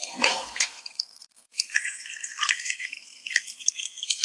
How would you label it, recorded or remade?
remade